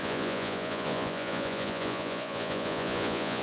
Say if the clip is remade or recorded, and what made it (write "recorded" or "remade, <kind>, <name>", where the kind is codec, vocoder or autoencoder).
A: remade, vocoder, Vocos